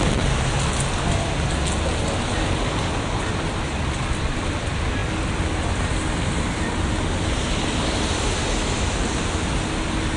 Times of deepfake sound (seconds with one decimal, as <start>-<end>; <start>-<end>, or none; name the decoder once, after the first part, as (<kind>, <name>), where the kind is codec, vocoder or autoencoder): none